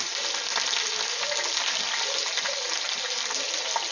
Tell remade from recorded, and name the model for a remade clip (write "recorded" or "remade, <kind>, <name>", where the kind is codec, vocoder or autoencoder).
recorded